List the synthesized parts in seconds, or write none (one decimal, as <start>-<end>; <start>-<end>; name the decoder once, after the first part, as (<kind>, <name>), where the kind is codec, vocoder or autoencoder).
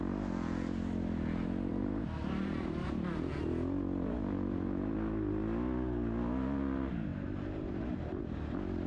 1.7-3.3 (vocoder, BigVGAN v2); 7.1-8.2